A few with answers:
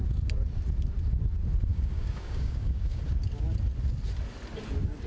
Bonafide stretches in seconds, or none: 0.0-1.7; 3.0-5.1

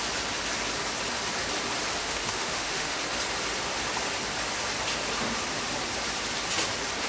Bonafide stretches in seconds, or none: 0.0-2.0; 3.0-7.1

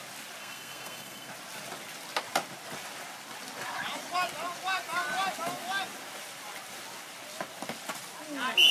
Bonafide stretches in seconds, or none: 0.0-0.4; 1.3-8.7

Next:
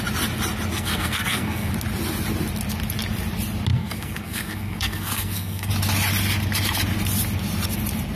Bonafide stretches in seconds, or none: 0.0-0.7; 1.7-3.7; 5.7-8.2

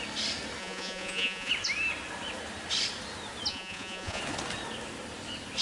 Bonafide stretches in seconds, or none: 0.0-0.6; 1.5-3.5; 4.2-5.6

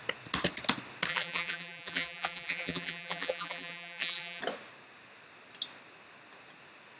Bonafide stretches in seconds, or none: 0.0-1.1; 4.4-7.0